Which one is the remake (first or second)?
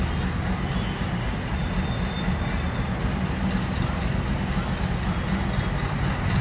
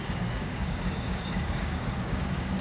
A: second